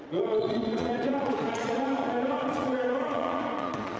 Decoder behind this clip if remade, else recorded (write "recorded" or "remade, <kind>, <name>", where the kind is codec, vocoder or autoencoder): remade, vocoder, Vocos